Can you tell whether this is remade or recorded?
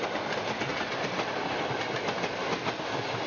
recorded